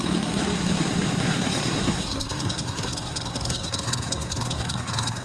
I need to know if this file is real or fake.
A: fake